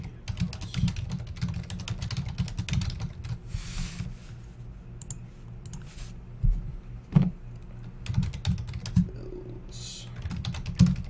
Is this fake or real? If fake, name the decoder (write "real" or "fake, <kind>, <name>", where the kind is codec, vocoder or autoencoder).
real